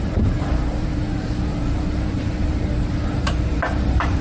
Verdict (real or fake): fake